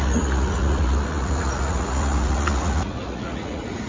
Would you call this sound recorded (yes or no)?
no